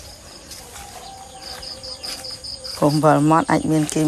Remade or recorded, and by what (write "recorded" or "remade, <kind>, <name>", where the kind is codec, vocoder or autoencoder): recorded